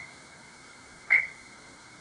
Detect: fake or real fake